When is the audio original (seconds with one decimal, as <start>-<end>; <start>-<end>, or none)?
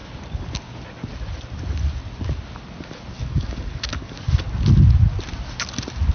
0.0-3.1; 4.3-6.1